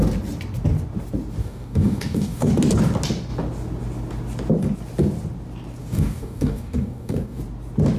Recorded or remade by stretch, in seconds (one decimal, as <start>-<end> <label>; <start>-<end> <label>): 0.0-1.4 recorded; 1.4-2.5 remade; 2.5-5.8 recorded; 5.8-7.4 remade; 7.4-8.0 recorded

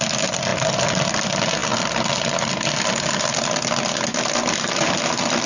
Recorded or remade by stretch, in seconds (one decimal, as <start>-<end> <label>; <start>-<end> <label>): 0.0-5.5 recorded

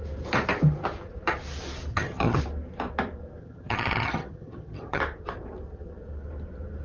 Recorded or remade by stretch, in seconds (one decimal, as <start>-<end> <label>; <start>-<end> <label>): 0.0-1.9 recorded; 1.9-2.4 remade; 2.4-3.4 recorded; 3.4-5.0 remade; 5.0-6.8 recorded

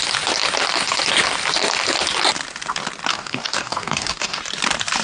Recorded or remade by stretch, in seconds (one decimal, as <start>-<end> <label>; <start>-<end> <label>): 0.0-3.1 recorded; 3.1-4.4 remade; 4.4-5.0 recorded

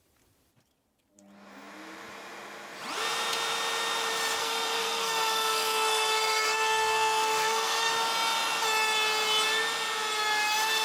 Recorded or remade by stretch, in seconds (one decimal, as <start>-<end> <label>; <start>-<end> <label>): 0.0-4.4 recorded; 4.4-7.9 remade; 7.9-10.8 recorded

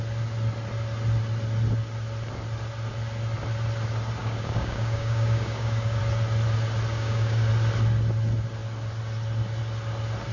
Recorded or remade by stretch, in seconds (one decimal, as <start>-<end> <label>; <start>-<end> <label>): 0.0-4.2 recorded; 4.2-6.0 remade; 6.0-6.9 recorded; 6.9-7.5 remade; 7.5-10.3 recorded

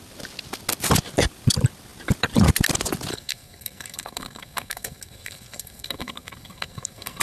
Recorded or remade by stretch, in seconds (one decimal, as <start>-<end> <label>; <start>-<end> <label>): 0.0-3.1 recorded; 3.1-7.2 remade